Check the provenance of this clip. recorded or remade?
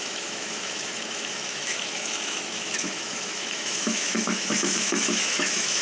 remade